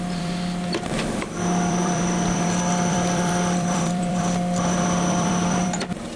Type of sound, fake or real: fake